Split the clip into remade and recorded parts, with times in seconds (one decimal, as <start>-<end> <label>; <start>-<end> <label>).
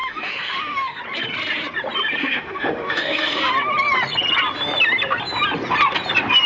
0.0-1.0 remade; 1.0-2.2 recorded; 2.2-3.4 remade; 3.4-6.5 recorded